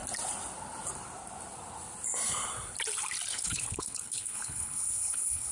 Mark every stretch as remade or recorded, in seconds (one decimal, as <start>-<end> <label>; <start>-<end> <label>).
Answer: 0.0-3.3 recorded; 3.3-5.5 remade